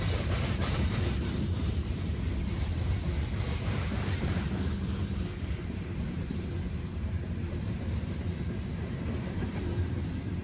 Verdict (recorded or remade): remade